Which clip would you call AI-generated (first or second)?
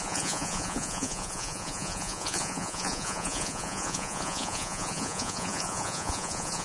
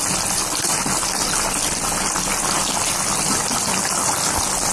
first